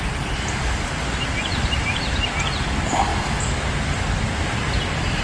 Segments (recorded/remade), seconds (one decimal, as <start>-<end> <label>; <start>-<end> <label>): 0.0-5.2 recorded